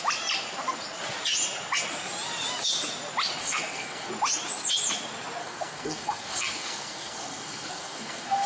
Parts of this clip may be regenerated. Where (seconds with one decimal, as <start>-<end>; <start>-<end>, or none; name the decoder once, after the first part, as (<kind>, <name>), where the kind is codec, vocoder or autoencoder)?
3.4-4.1 (codec, SNAC); 5.4-8.5